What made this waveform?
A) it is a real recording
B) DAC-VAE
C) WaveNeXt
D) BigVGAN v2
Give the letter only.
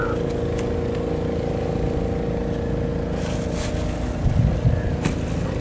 A